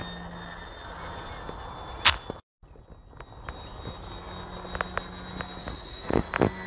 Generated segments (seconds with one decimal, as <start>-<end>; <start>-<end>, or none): 5.6-6.3